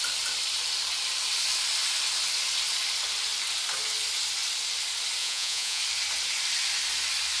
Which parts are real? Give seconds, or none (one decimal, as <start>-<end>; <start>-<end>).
0.0-5.2; 5.8-7.4